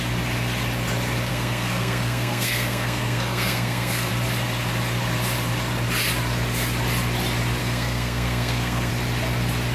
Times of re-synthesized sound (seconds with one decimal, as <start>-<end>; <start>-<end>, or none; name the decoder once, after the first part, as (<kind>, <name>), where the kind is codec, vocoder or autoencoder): 1.3-4.1 (codec, SNAC); 7.6-8.9